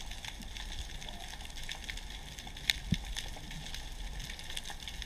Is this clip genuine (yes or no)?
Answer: yes